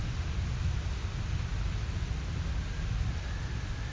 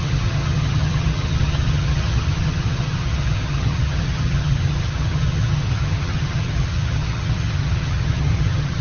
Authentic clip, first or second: first